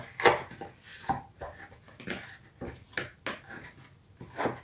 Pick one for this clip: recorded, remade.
recorded